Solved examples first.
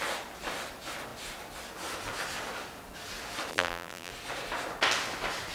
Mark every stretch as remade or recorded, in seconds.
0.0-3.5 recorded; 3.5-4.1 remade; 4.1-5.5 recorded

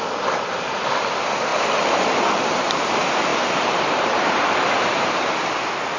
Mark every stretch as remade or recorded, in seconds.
0.0-1.5 recorded; 1.5-2.9 remade; 2.9-3.3 recorded; 3.3-5.0 remade; 5.0-6.0 recorded

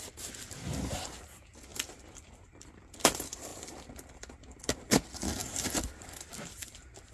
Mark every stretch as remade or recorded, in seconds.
0.0-1.7 recorded; 1.7-2.9 remade; 2.9-5.4 recorded; 5.4-6.6 remade; 6.6-7.1 recorded

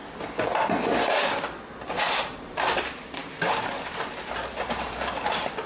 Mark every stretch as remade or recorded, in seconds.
0.0-2.1 recorded; 2.1-5.7 remade

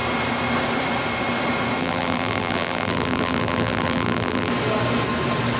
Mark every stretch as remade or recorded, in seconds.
0.0-1.8 recorded; 1.8-4.5 remade; 4.5-5.6 recorded

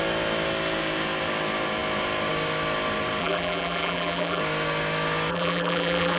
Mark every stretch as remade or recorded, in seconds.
0.0-3.2 recorded; 3.2-4.4 remade; 4.4-5.3 recorded; 5.3-6.2 remade

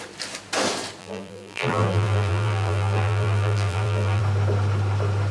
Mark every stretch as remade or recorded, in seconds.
0.0-1.0 recorded; 1.0-4.2 remade; 4.2-5.3 recorded

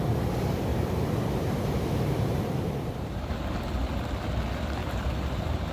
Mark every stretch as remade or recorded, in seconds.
0.0-0.7 recorded; 0.7-3.4 remade; 3.4-4.8 recorded; 4.8-5.7 remade